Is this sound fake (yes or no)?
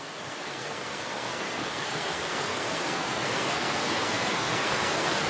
yes